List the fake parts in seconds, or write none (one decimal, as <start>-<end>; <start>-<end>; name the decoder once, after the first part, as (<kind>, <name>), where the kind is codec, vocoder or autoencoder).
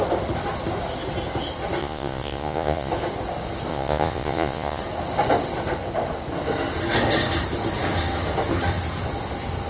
1.8-2.9 (vocoder, Vocos); 3.7-4.8